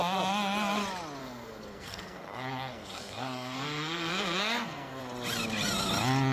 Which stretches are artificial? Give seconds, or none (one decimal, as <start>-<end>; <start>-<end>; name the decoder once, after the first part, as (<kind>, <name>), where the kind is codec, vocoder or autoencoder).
1.2-5.0 (codec, SNAC)